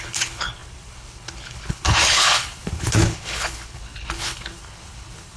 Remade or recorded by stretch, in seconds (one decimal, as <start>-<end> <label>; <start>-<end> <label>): 0.0-5.4 remade

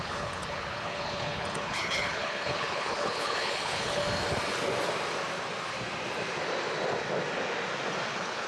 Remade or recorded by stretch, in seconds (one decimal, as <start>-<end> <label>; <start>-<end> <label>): 0.0-4.0 remade; 4.0-8.1 recorded; 8.1-8.5 remade

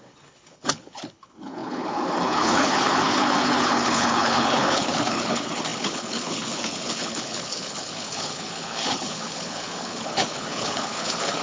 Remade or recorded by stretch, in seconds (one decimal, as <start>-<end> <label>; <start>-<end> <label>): 0.0-11.4 remade

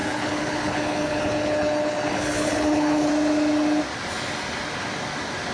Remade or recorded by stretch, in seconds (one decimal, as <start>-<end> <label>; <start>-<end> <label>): 0.0-3.1 remade; 3.1-5.5 recorded

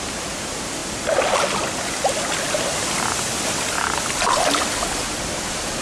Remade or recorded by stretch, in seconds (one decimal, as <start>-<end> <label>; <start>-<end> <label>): 0.0-5.8 recorded

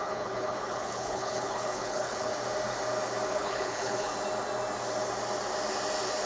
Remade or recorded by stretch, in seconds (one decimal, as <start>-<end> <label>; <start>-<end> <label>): 0.0-2.3 remade; 2.3-3.3 recorded; 3.3-4.1 remade; 4.1-6.3 recorded

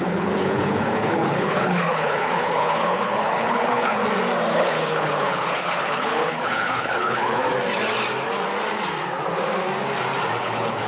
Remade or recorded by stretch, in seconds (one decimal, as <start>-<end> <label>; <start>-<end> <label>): 0.0-4.0 remade; 4.0-4.5 recorded; 4.5-7.4 remade; 7.4-10.4 recorded; 10.4-10.9 remade

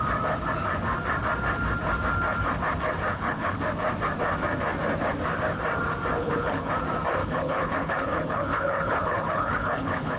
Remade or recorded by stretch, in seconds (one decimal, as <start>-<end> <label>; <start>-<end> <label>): 0.0-3.1 recorded; 3.1-3.6 remade; 3.6-6.2 recorded; 6.2-6.7 remade; 6.7-7.2 recorded; 7.2-10.2 remade